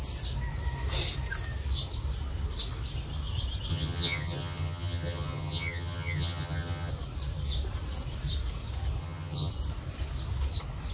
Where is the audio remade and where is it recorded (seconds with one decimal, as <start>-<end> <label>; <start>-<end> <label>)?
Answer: 0.0-3.7 recorded; 3.7-6.9 remade; 6.9-9.0 recorded; 9.0-9.5 remade; 9.5-10.9 recorded